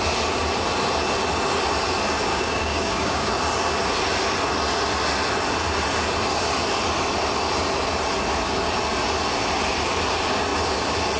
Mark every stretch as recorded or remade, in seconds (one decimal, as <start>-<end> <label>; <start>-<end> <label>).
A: 0.0-2.3 recorded; 2.3-3.3 remade; 3.3-11.2 recorded